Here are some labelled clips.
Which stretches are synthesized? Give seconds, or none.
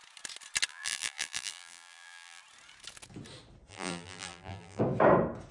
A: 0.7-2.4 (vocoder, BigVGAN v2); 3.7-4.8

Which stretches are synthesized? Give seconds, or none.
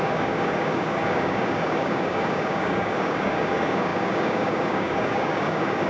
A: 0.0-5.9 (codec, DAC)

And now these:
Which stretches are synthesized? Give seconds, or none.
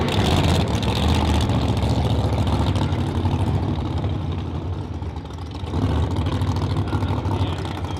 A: 2.9-4.5 (vocoder, BigVGAN v2)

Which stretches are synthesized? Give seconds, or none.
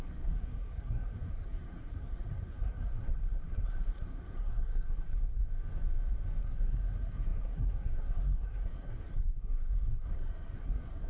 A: 0.0-5.4 (codec, SNAC); 6.4-11.1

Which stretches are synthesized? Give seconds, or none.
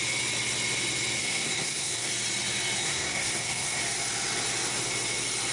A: 1.2-2.1 (codec, SNAC); 2.8-3.8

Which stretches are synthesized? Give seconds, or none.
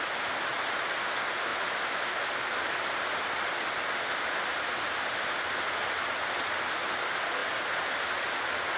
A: none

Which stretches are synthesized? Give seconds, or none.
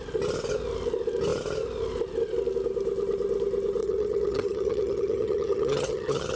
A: 3.8-6.4 (vocoder, HiFi-GAN)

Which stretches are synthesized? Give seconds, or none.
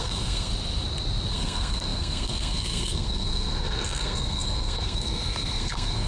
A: 0.0-0.5 (codec, SNAC); 1.3-6.1